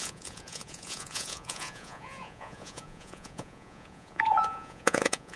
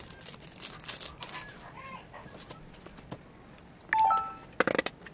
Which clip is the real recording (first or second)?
second